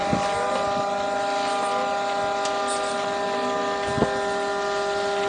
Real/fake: real